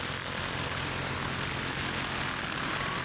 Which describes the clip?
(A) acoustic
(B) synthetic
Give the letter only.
A